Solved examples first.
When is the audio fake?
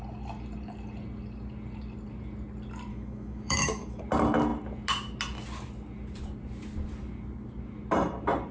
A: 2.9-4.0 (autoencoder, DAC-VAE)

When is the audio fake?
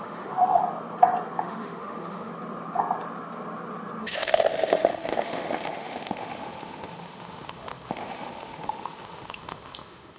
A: 0.0-0.6 (autoencoder, DAC-VAE); 1.4-2.3; 4.0-10.2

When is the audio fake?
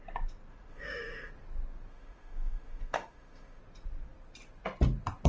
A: 0.5-1.3 (autoencoder, DAC-VAE); 1.9-3.6